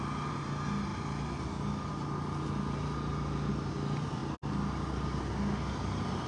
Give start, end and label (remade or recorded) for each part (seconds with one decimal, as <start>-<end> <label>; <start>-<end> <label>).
0.0-6.3 recorded